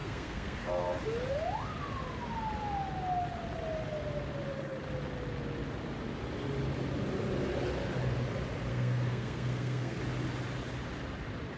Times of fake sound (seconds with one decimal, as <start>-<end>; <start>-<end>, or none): 0.0-0.7; 8.7-10.0